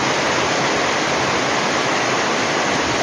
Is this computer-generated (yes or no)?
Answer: no